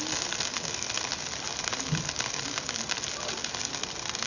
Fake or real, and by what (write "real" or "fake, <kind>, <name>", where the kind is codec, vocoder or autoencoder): real